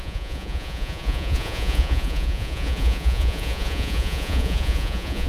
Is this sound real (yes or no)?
no